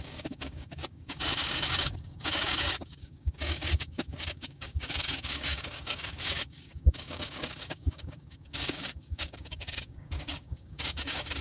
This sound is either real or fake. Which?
fake